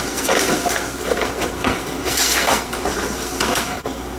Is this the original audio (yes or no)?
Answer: no